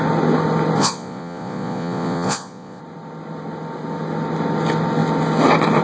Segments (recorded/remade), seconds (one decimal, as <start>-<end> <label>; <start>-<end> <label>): 0.0-0.8 recorded; 0.8-2.8 remade; 2.8-5.8 recorded